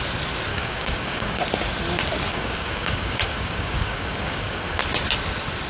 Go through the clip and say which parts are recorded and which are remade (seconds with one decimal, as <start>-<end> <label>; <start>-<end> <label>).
0.0-0.5 recorded; 0.5-1.4 remade; 1.4-2.3 recorded; 2.3-4.8 remade; 4.8-5.7 recorded